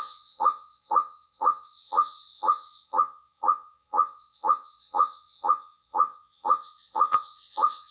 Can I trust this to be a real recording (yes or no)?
no